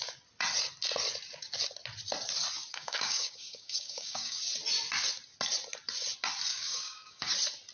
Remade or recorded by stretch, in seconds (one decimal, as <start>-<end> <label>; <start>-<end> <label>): 0.0-2.7 recorded; 2.7-4.4 remade; 4.4-6.5 recorded; 6.5-7.3 remade; 7.3-7.7 recorded

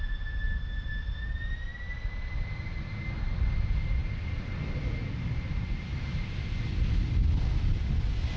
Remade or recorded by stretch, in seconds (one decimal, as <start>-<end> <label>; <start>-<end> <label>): 0.0-8.4 recorded